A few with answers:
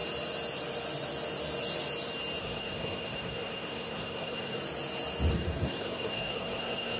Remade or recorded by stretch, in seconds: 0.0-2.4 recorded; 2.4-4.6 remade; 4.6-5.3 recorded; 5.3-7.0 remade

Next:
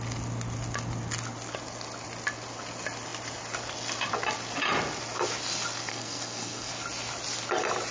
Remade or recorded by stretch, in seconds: 0.0-5.9 recorded; 5.9-6.7 remade; 6.7-7.9 recorded

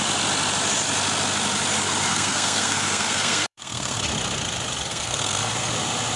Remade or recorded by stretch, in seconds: 0.0-2.1 recorded; 2.1-4.0 remade; 4.0-4.9 recorded; 4.9-5.7 remade; 5.7-6.2 recorded

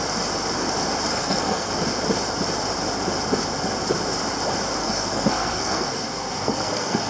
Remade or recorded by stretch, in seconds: 0.0-1.1 recorded; 1.1-1.7 remade; 1.7-4.8 recorded; 4.8-7.1 remade

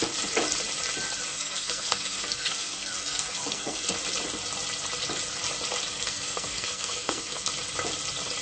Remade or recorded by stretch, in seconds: 0.0-1.3 recorded; 1.3-3.9 remade; 3.9-5.9 recorded; 5.9-7.5 remade; 7.5-8.4 recorded

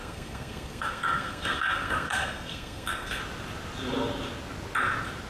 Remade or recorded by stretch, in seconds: 0.0-3.2 remade; 3.2-5.3 recorded